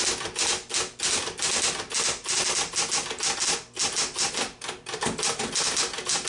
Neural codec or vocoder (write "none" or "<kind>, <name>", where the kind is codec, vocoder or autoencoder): none